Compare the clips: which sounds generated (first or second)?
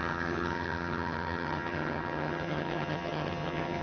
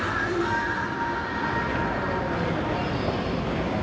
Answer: first